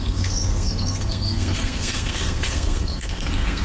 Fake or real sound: fake